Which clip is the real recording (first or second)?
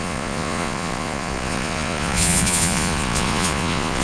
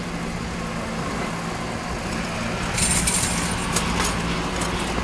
second